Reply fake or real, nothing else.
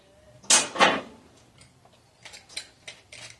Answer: real